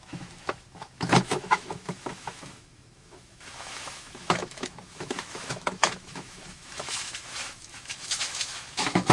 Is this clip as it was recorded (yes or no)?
no